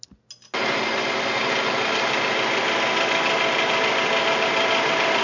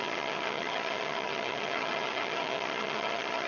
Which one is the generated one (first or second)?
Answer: second